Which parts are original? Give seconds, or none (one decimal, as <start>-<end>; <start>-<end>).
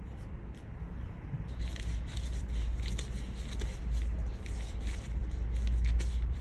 0.0-0.6; 2.4-6.4